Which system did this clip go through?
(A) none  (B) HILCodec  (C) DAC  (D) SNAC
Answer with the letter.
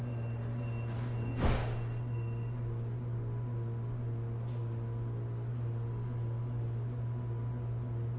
A